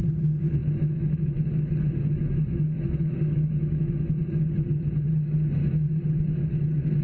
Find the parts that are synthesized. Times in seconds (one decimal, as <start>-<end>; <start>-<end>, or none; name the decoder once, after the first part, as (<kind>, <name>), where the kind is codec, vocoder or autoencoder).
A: 0.6-4.2 (autoencoder, DAC-VAE); 5.6-6.4